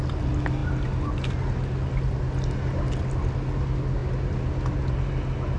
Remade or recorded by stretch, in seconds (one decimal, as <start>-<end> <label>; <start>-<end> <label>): 0.0-5.6 recorded